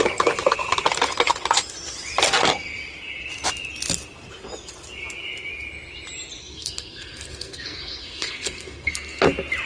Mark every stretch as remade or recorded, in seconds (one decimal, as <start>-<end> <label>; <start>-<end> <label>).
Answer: 0.0-6.4 recorded; 6.4-9.2 remade; 9.2-9.7 recorded